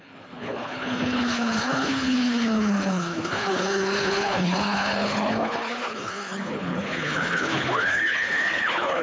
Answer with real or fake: fake